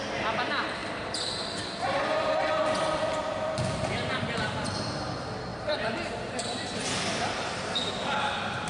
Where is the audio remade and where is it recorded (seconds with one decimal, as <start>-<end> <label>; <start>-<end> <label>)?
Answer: 0.0-0.8 recorded; 0.8-4.9 remade; 4.9-5.5 recorded; 5.5-6.9 remade; 6.9-8.7 recorded